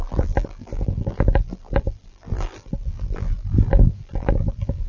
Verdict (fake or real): fake